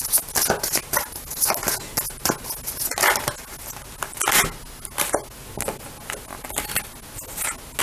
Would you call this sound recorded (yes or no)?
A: yes